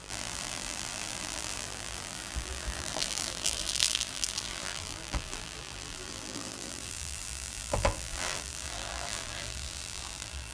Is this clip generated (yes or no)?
yes